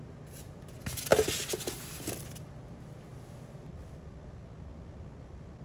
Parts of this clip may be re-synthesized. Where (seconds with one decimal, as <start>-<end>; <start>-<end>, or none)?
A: none